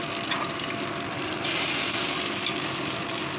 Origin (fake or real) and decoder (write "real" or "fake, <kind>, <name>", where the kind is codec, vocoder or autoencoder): real